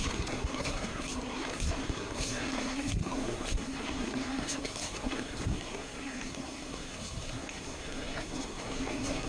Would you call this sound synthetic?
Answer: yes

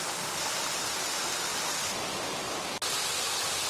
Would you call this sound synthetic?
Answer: no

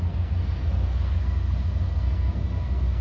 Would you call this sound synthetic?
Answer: yes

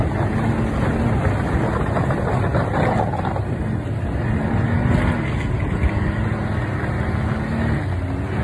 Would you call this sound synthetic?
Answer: no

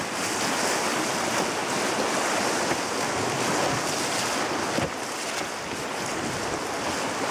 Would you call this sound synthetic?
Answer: no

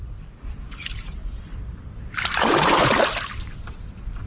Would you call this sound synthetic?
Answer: no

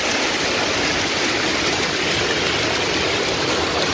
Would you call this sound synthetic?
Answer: no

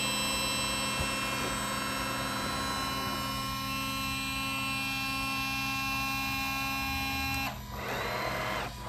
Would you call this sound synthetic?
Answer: no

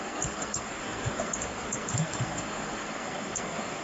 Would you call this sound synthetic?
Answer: yes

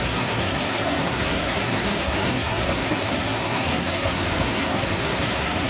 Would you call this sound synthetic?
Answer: yes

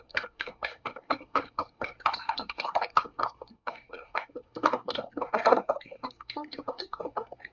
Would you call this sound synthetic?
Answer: yes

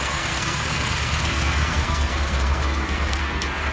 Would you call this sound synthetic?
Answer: yes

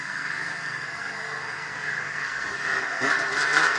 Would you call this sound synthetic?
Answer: yes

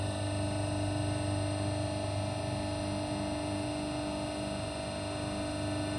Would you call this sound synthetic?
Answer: no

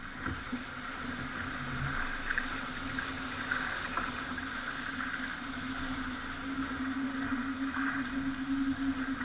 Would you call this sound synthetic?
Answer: no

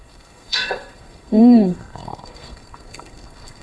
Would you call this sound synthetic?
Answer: yes